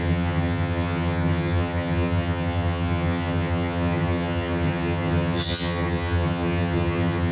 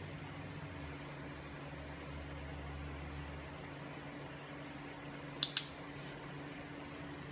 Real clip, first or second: second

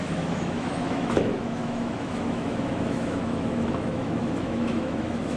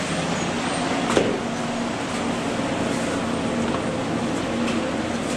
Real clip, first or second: second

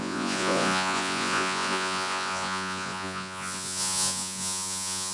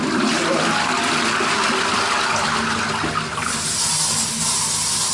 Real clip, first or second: second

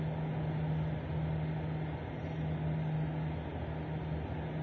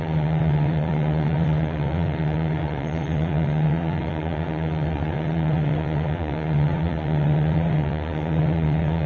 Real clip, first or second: first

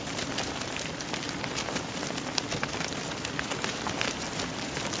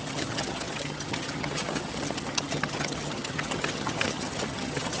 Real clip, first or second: first